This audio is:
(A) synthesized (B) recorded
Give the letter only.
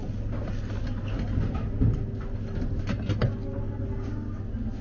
B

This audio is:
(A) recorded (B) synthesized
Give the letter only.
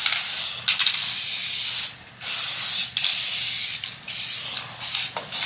A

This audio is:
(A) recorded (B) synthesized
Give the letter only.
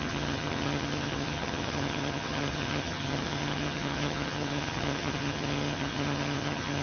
B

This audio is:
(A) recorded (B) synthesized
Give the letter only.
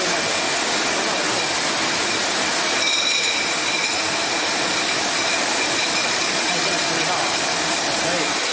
A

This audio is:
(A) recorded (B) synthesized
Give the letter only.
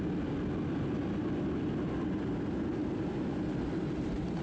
A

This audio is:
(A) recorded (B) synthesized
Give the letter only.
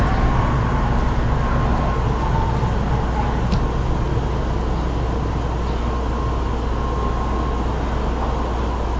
A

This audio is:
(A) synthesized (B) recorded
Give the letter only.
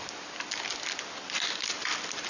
B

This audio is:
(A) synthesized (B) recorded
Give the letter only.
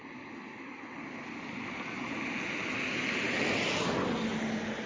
B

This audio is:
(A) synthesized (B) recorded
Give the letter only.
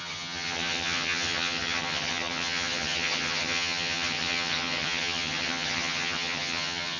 A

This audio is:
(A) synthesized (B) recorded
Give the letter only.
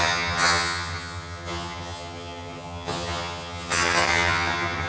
A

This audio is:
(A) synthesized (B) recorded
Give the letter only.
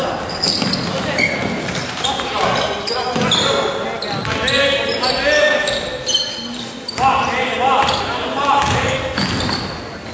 B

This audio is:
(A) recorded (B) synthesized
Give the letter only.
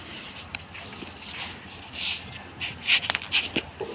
A